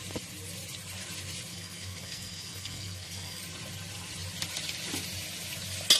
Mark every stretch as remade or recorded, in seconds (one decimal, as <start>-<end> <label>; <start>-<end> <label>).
0.0-1.5 recorded; 1.5-3.4 remade; 3.4-6.0 recorded